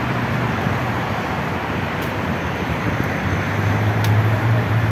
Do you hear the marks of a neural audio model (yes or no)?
yes